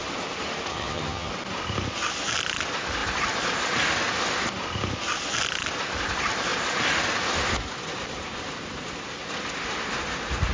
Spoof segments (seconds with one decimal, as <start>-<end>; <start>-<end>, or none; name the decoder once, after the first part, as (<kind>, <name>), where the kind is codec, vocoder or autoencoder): 0.7-1.3 (vocoder, HiFi-GAN)